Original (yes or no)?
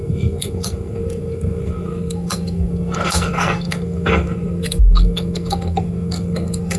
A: no